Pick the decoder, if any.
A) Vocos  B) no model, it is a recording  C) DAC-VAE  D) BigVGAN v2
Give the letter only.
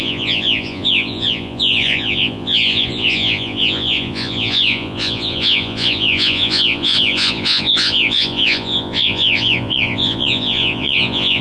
A